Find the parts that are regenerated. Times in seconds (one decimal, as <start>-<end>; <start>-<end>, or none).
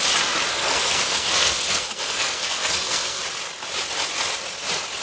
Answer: 0.5-3.2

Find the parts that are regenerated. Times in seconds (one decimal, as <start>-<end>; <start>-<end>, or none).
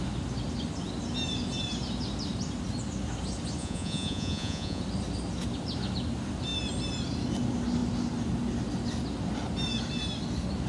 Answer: 3.6-4.8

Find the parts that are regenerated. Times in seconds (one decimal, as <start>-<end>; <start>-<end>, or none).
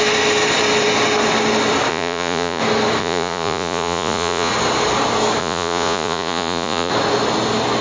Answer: 1.9-2.6; 3.0-4.5; 5.4-6.9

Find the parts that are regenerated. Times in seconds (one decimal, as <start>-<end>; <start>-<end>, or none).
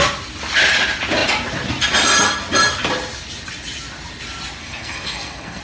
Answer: 4.6-5.6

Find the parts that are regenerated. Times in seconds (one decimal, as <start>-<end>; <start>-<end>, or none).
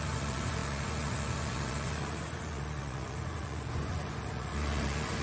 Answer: 0.0-5.2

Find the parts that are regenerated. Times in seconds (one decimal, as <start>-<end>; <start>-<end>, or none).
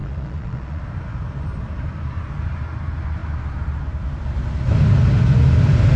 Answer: 0.0-0.8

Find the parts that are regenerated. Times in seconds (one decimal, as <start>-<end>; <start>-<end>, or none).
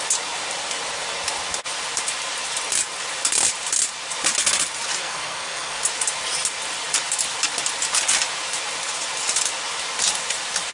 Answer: 5.0-5.8